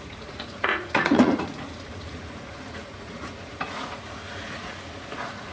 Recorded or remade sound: remade